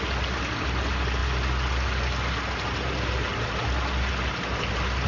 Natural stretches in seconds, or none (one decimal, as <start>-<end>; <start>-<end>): 0.0-5.1